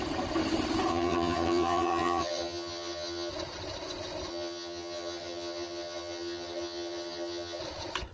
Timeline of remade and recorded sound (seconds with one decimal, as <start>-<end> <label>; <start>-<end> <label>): 0.0-0.9 recorded; 0.9-3.3 remade; 3.3-4.3 recorded; 4.3-7.6 remade; 7.6-8.1 recorded